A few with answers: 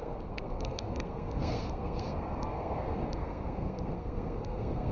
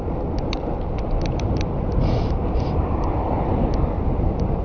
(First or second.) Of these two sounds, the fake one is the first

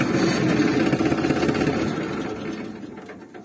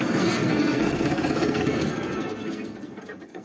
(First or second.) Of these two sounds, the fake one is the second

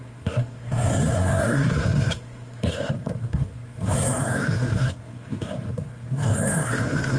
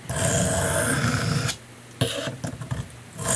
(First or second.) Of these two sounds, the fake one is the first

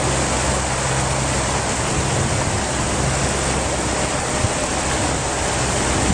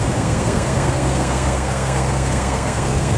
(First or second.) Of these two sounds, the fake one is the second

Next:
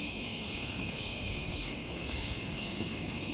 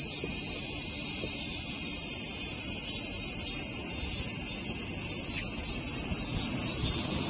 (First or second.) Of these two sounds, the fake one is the first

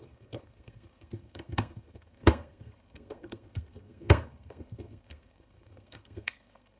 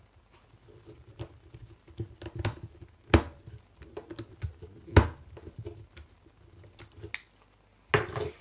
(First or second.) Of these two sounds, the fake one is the first